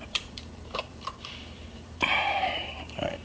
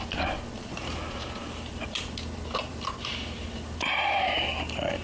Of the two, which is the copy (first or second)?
first